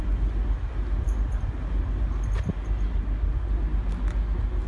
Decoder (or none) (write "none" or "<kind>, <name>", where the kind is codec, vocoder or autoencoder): none